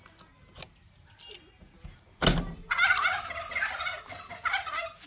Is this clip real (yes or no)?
yes